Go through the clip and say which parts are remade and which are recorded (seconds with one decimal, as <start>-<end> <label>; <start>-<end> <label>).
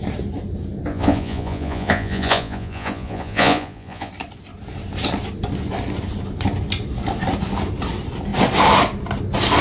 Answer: 0.0-0.9 recorded; 0.9-4.1 remade; 4.1-9.6 recorded